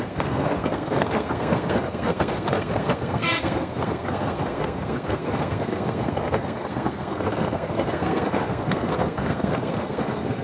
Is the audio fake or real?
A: fake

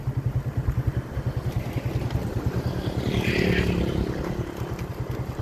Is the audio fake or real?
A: real